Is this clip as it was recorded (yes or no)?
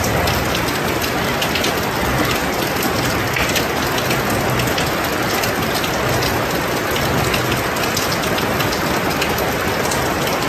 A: yes